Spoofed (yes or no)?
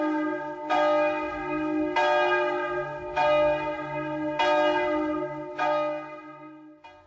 no